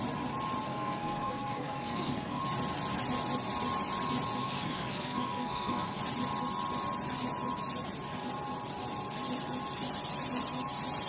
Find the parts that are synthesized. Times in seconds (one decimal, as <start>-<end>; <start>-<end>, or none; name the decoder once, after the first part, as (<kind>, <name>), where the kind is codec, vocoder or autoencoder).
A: 0.7-2.4 (codec, SNAC); 4.4-6.0